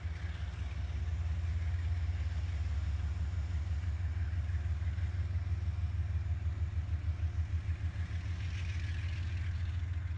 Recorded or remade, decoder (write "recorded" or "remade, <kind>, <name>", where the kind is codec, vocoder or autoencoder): recorded